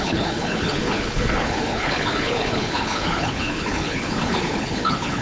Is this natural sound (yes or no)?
no